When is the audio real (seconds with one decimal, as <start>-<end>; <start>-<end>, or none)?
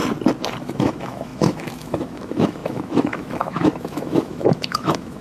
0.0-0.6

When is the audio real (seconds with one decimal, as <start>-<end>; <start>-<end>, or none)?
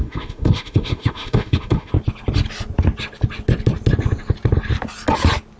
1.9-5.6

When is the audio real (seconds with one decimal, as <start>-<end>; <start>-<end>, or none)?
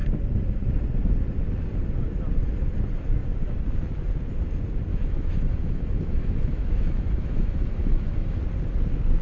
0.0-4.9; 8.4-9.2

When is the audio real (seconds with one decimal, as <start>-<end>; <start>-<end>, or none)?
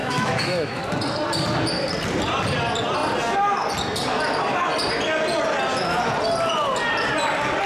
0.8-7.7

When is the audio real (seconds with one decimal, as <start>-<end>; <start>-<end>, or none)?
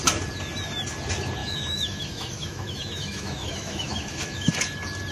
0.0-1.4; 4.5-5.1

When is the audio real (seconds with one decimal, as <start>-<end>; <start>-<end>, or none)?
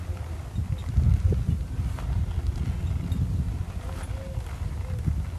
0.0-5.4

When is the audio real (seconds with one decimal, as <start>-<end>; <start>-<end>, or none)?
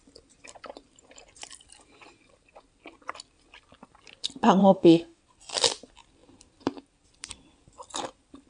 0.0-4.6; 5.2-8.5